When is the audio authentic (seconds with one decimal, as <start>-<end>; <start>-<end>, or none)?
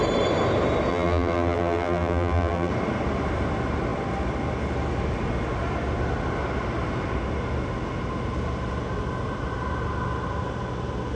0.0-0.9; 2.7-11.2